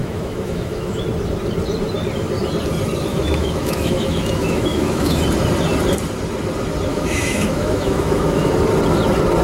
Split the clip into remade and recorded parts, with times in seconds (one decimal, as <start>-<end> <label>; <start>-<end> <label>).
0.0-1.0 remade; 1.0-3.1 recorded; 3.1-5.2 remade; 5.2-6.9 recorded; 6.9-8.5 remade; 8.5-9.4 recorded